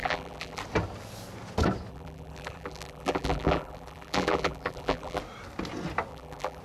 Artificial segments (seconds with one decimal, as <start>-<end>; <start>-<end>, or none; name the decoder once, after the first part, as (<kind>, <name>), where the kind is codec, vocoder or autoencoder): 0.0-0.6 (vocoder, BigVGAN v2); 1.9-5.2; 6.1-6.6